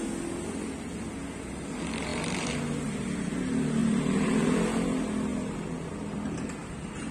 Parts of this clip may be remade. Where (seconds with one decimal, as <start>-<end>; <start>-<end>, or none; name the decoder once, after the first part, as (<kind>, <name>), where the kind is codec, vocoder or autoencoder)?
3.8-4.3 (vocoder, BigVGAN v2)